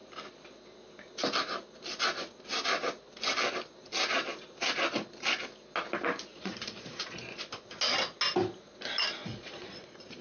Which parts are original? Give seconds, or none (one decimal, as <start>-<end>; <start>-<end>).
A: 0.0-6.3; 7.4-9.2